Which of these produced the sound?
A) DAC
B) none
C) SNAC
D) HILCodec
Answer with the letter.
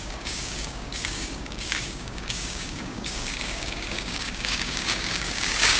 A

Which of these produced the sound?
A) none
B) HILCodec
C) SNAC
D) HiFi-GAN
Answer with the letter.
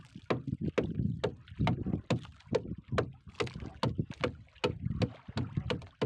A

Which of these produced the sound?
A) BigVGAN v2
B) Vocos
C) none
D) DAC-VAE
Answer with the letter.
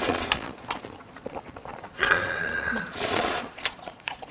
B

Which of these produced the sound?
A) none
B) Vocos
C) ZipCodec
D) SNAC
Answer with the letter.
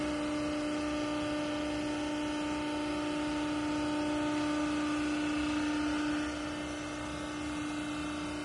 A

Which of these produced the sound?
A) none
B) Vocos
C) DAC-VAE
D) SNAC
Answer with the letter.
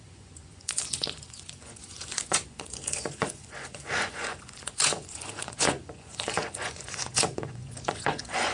B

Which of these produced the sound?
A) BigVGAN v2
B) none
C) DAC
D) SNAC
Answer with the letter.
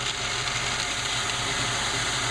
B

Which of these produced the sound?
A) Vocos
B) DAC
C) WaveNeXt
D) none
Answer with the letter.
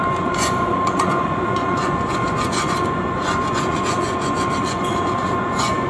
A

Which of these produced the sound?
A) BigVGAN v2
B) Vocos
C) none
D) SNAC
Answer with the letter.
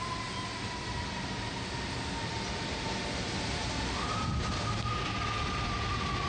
C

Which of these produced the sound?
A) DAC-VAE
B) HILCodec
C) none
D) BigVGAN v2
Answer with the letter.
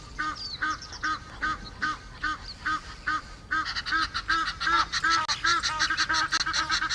C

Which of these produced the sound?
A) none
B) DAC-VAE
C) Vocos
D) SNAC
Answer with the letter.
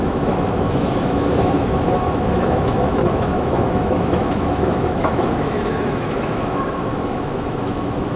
B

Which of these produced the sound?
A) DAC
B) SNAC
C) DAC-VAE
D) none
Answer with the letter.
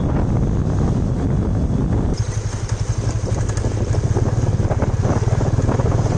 D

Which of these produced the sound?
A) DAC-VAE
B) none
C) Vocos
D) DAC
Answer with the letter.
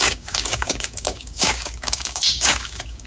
D